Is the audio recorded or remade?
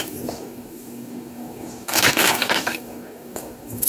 remade